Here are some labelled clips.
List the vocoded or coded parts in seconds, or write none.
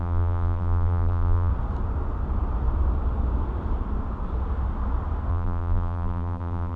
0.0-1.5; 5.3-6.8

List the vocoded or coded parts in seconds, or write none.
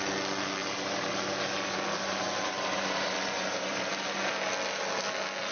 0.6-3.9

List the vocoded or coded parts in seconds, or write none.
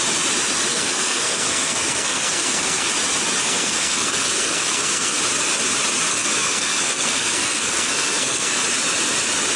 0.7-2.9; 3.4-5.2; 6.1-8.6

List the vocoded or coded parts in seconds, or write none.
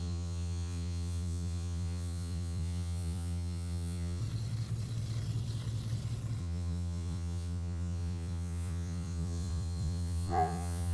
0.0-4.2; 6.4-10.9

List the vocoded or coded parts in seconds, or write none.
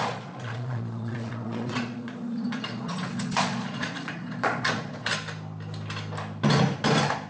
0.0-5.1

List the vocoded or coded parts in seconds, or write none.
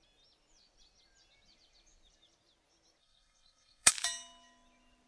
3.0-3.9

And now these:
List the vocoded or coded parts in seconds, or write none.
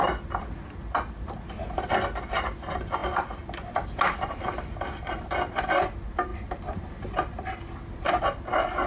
none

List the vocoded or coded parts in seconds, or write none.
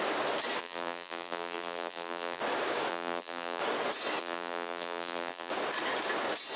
0.6-2.4; 2.9-3.6; 4.2-5.5